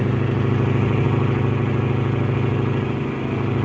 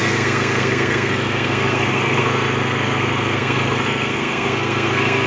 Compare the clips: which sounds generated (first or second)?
second